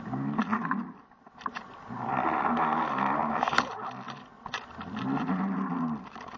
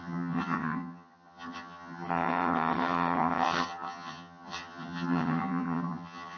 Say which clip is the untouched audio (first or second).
first